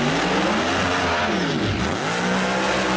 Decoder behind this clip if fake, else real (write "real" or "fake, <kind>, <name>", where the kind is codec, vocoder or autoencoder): real